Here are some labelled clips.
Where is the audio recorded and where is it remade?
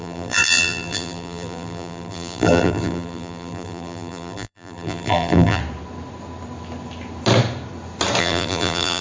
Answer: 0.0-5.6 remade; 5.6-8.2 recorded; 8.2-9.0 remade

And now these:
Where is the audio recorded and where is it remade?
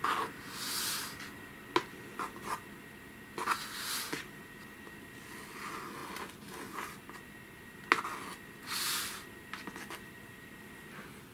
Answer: 0.0-11.3 recorded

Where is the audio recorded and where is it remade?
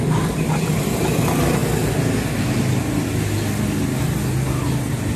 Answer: 0.0-1.6 remade; 1.6-4.7 recorded; 4.7-5.2 remade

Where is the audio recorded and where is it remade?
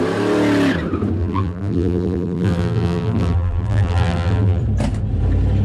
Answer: 0.0-1.2 recorded; 1.2-4.6 remade; 4.6-5.6 recorded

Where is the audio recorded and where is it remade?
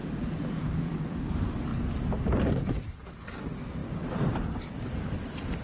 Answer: 0.0-0.6 recorded; 0.6-1.7 remade; 1.7-2.5 recorded; 2.5-5.6 remade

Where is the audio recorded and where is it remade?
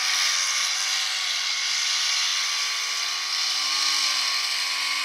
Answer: 0.0-2.3 remade; 2.3-3.1 recorded; 3.1-5.0 remade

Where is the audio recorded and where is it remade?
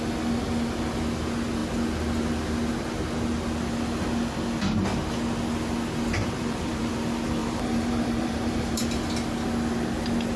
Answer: 0.0-6.2 recorded; 6.2-6.9 remade; 6.9-7.4 recorded; 7.4-8.8 remade; 8.8-10.4 recorded